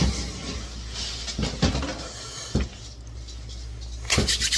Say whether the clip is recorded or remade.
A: recorded